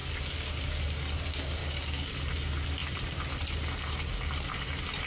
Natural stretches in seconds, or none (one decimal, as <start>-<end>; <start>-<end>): 0.0-1.6; 2.1-5.1